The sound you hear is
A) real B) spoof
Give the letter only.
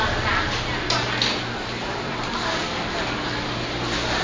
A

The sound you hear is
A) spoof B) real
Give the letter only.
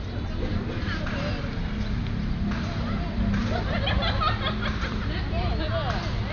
B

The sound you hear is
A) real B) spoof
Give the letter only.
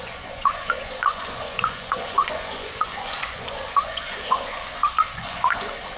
B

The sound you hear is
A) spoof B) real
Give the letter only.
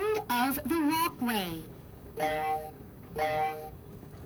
A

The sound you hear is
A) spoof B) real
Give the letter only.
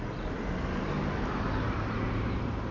B